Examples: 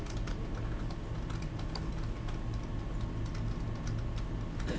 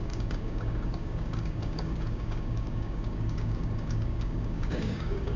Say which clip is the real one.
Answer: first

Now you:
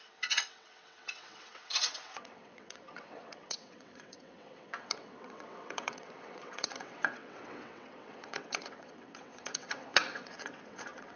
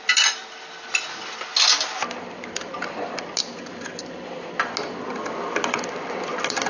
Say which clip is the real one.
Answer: second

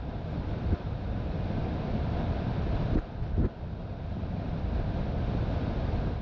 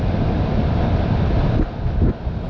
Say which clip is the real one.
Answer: second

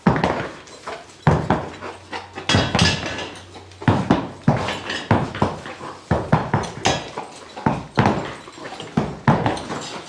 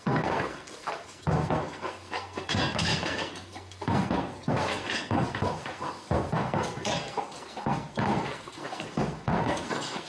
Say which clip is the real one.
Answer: first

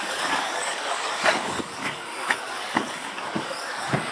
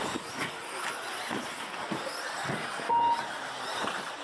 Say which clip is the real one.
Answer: second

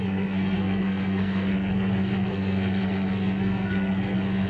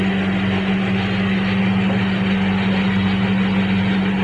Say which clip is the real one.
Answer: second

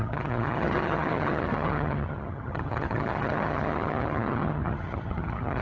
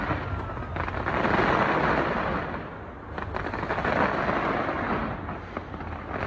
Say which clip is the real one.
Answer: second